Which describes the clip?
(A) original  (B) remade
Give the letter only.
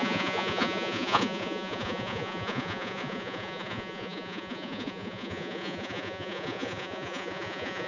B